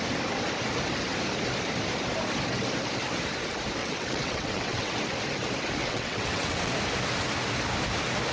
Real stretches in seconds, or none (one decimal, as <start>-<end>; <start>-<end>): 0.0-3.8; 4.9-5.8; 6.7-8.3